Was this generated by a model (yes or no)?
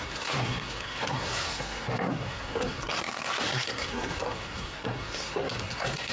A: yes